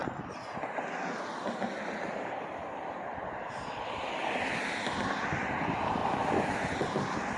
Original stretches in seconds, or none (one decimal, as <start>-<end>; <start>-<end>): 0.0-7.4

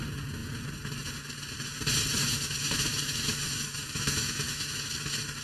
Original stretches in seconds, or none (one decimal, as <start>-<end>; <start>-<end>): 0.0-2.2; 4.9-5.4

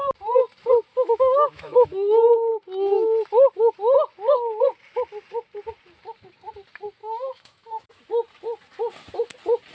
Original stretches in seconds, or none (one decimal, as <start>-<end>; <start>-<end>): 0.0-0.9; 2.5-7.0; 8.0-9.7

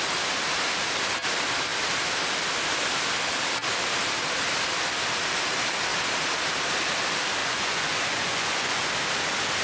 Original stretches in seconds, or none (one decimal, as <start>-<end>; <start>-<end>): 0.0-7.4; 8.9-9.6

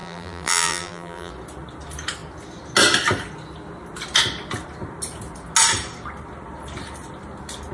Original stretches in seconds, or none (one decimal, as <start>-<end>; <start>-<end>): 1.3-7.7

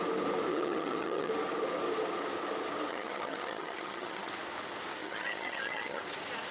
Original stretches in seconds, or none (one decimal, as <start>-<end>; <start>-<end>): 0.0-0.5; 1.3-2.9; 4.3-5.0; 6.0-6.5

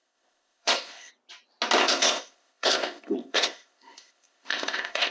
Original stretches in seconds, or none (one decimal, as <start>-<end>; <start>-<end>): 1.1-1.8

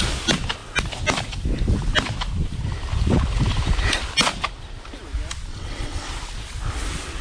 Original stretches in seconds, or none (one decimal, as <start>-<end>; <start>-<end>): 0.0-5.5; 6.1-7.2